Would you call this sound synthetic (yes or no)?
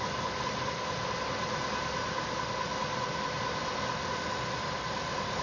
no